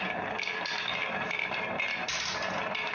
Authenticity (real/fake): real